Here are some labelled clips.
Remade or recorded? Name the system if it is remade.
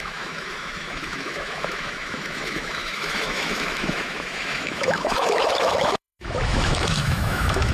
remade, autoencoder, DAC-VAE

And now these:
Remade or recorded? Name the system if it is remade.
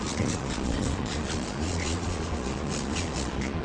remade, vocoder, Vocos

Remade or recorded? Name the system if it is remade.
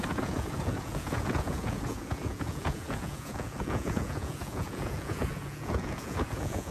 remade, vocoder, Vocos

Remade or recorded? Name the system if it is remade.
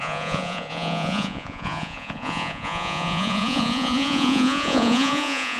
remade, vocoder, Vocos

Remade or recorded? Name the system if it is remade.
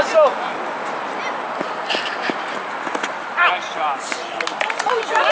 recorded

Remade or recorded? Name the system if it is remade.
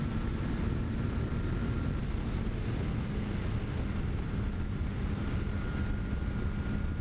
recorded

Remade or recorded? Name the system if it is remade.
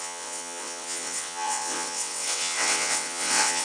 remade, vocoder, WaveNeXt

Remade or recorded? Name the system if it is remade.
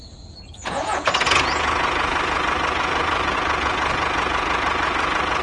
remade, vocoder, Vocos